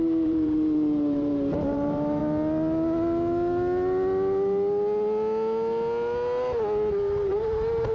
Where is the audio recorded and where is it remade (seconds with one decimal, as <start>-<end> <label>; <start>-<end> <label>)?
0.0-2.2 remade; 2.2-6.9 recorded; 6.9-7.9 remade